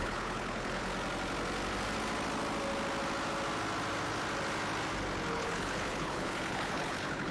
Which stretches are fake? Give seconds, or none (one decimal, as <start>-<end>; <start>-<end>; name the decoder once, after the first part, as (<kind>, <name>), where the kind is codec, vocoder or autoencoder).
0.0-0.9 (codec, HILCodec); 5.3-7.3